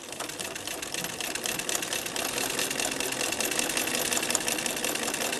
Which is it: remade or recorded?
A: recorded